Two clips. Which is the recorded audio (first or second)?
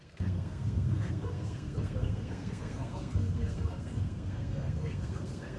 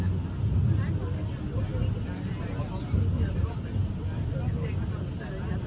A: second